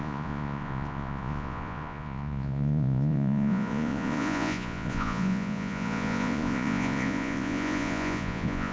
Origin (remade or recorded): remade